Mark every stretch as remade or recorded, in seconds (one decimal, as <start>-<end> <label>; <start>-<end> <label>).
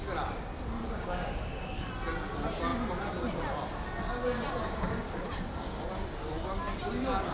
0.0-0.8 recorded; 0.8-1.9 remade; 1.9-4.6 recorded; 4.6-5.8 remade; 5.8-7.3 recorded